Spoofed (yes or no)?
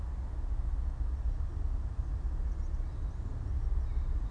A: no